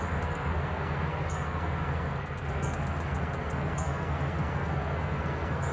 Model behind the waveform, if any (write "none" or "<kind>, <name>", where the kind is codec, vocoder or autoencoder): codec, SNAC